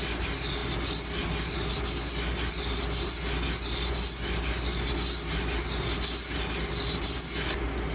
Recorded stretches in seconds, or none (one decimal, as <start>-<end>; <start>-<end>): 0.0-7.9